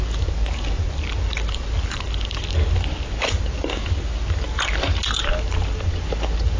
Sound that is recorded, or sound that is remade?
recorded